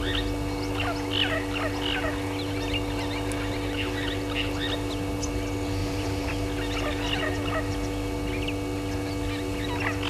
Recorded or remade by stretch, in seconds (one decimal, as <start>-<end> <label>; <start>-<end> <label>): 0.0-5.8 recorded; 5.8-6.3 remade; 6.3-10.1 recorded